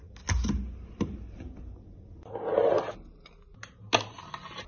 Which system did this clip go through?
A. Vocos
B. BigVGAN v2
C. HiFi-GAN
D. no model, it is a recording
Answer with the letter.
D